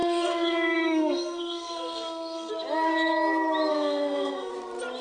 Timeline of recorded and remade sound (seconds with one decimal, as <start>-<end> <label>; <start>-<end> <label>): 0.0-2.5 remade; 2.5-3.7 recorded; 3.7-4.5 remade; 4.5-5.0 recorded

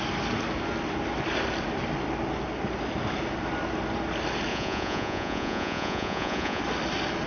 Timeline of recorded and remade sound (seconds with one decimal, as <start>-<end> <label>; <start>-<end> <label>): 0.0-4.5 recorded; 4.5-6.6 remade; 6.6-7.3 recorded

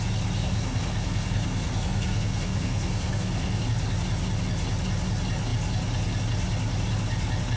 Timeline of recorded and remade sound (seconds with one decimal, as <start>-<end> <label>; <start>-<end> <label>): 0.0-0.4 recorded; 0.4-3.6 remade; 3.6-7.6 recorded

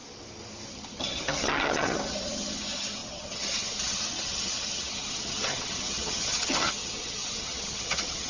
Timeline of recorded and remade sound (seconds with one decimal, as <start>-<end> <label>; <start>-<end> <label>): 0.0-0.7 recorded; 0.7-8.3 remade

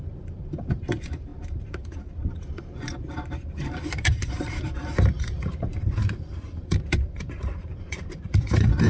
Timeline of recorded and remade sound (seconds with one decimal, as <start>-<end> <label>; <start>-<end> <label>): 0.0-8.9 remade

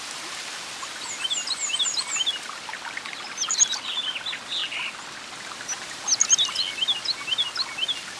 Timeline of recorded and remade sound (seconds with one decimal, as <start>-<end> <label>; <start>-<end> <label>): 0.0-8.2 recorded

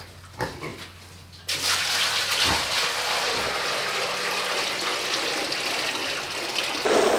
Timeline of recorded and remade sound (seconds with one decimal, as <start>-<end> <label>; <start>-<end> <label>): 0.0-7.2 recorded

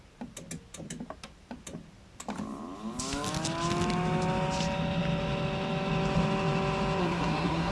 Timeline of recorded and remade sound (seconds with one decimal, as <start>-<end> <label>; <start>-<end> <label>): 0.0-7.0 recorded; 7.0-7.7 remade